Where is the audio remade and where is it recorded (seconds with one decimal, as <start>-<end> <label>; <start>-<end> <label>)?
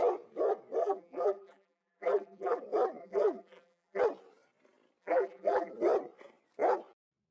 0.0-0.8 recorded; 0.8-2.6 remade; 2.6-3.0 recorded; 3.0-4.0 remade; 4.0-5.0 recorded; 5.0-5.7 remade; 5.7-7.3 recorded